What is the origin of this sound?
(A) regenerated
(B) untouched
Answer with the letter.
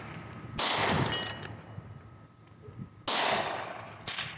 B